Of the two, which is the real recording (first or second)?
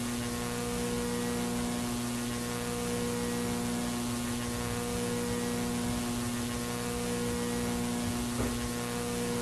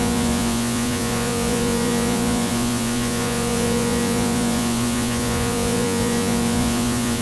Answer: first